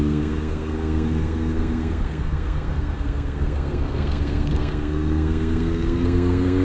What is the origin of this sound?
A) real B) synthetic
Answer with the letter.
B